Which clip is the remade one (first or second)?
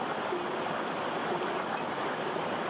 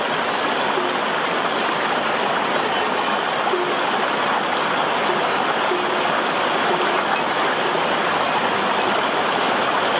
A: first